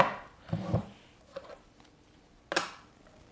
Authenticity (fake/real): real